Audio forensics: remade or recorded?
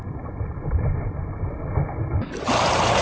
recorded